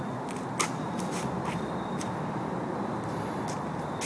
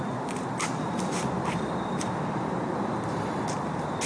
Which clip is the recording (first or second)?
first